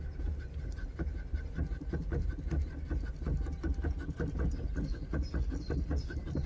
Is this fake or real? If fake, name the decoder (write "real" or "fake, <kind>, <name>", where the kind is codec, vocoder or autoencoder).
real